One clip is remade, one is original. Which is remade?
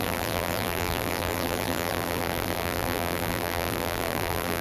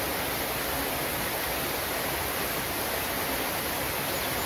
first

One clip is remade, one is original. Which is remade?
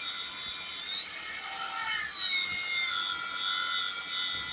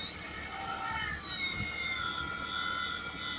second